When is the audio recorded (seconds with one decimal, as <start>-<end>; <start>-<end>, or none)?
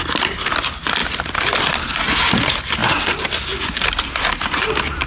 0.0-1.0; 1.6-5.1